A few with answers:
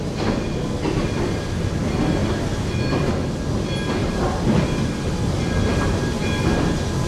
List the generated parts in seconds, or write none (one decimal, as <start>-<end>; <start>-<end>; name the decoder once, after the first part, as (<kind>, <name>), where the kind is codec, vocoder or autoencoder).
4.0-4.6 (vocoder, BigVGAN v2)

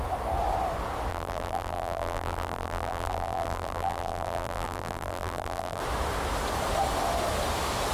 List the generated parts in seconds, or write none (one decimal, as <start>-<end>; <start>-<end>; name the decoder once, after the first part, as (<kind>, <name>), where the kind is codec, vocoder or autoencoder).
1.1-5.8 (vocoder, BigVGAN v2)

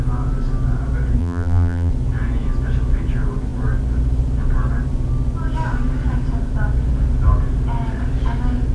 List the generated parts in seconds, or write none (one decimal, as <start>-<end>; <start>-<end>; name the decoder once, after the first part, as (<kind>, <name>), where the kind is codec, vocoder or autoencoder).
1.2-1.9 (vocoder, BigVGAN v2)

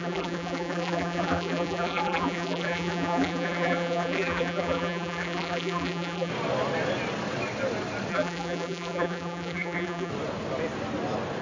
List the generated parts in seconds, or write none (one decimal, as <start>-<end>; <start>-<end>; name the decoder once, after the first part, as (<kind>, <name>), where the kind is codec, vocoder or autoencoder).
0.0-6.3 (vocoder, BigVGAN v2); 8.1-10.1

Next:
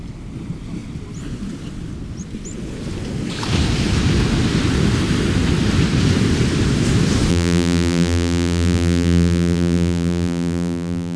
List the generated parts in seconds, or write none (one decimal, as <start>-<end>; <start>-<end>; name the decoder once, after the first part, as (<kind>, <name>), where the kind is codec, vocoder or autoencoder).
7.3-11.2 (vocoder, BigVGAN v2)

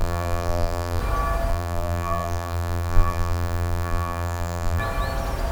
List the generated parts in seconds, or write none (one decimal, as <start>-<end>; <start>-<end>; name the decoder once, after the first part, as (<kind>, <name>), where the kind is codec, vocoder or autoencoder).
0.0-1.0 (vocoder, BigVGAN v2); 1.5-4.8

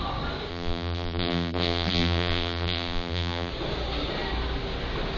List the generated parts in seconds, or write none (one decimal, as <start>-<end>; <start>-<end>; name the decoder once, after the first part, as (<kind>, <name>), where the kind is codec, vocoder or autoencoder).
0.5-3.5 (vocoder, BigVGAN v2)